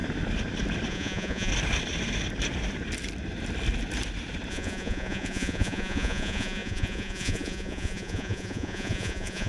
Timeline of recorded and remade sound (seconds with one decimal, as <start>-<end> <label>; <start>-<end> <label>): 0.0-0.9 recorded; 0.9-1.5 remade; 1.5-4.5 recorded; 4.5-9.5 remade